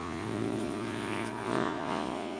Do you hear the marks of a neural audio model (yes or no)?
yes